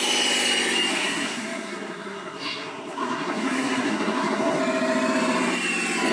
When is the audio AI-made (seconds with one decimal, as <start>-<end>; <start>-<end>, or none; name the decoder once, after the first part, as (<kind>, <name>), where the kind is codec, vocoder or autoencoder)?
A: 0.9-4.6 (codec, SNAC)